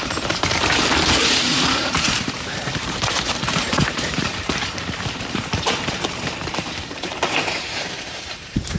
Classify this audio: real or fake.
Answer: fake